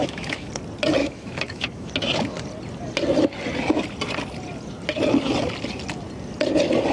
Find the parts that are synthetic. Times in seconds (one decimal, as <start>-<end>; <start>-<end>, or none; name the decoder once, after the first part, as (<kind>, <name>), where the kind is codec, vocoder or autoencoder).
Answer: 0.0-0.5 (autoencoder, DAC-VAE); 1.0-1.9